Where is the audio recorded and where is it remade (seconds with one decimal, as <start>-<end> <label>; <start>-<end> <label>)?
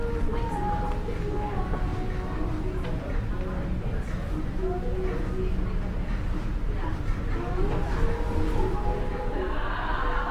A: 0.0-8.7 recorded; 8.7-9.7 remade; 9.7-10.3 recorded